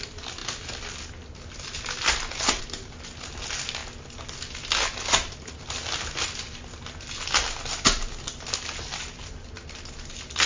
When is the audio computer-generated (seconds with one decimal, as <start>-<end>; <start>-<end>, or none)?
none